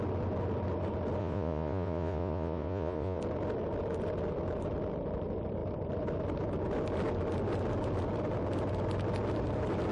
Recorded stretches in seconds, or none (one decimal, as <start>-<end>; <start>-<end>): 0.0-1.2; 3.2-9.9